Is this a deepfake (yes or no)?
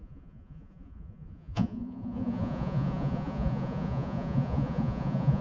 yes